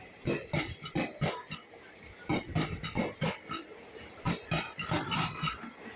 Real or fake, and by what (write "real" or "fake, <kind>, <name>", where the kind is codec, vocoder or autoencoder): real